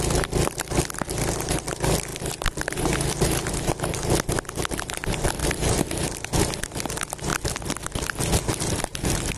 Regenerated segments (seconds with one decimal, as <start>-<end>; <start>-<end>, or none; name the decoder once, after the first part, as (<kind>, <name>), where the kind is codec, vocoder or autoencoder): none